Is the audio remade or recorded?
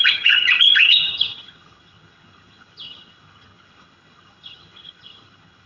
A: remade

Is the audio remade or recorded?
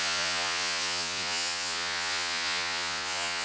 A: remade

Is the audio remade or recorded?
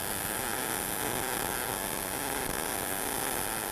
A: recorded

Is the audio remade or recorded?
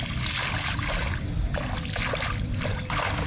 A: recorded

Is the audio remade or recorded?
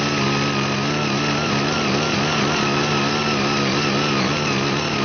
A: recorded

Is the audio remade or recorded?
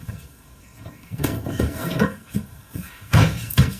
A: remade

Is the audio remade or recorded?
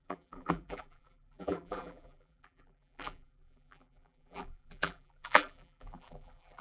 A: remade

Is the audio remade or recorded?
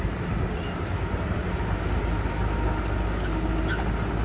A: recorded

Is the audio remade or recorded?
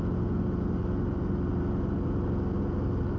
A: recorded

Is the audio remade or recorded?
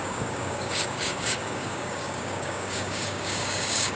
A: remade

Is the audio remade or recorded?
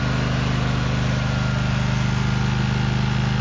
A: recorded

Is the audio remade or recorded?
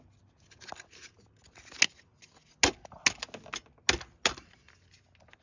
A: recorded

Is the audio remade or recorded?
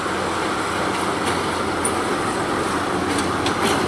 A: recorded